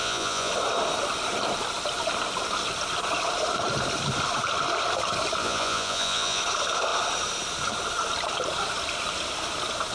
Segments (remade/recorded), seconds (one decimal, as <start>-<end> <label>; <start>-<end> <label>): 0.0-0.5 remade; 0.5-5.4 recorded; 5.4-6.4 remade; 6.4-9.9 recorded